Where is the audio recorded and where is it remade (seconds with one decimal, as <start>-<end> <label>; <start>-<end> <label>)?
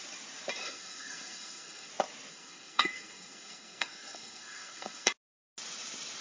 0.0-0.6 recorded; 0.6-1.9 remade; 1.9-2.3 recorded; 2.3-5.1 remade; 5.1-6.2 recorded